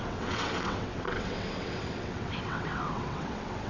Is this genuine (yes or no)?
no